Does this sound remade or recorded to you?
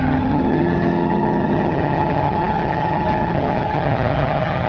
remade